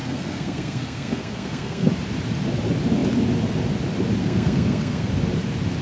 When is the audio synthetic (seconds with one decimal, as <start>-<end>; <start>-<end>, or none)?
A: 0.0-1.9; 4.2-5.1